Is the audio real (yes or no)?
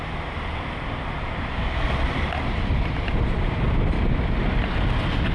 yes